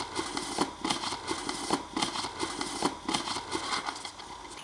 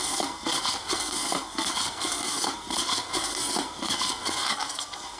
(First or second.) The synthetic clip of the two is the second